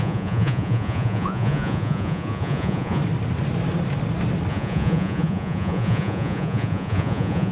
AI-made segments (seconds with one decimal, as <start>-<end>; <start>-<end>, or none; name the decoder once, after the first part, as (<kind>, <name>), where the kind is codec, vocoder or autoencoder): 0.0-3.0 (vocoder, Vocos); 4.5-7.5